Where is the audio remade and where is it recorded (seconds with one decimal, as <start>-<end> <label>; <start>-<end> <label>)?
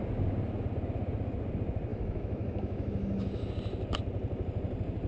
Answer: 0.0-1.9 recorded; 1.9-3.5 remade; 3.5-5.1 recorded